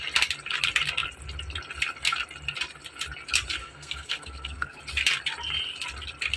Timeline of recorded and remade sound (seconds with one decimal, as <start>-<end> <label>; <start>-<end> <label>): 0.0-3.6 recorded; 3.6-4.8 remade; 4.8-6.4 recorded